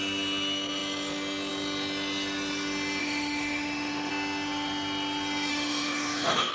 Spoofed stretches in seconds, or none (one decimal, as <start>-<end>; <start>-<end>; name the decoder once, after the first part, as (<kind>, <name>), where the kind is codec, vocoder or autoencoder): 3.0-4.1 (autoencoder, DAC-VAE); 5.5-6.5